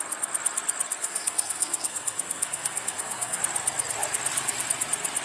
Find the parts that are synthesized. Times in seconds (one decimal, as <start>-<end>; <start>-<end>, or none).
1.0-3.4